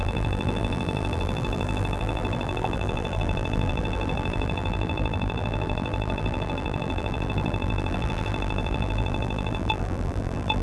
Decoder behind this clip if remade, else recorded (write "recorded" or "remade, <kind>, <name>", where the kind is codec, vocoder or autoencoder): remade, vocoder, BigVGAN v2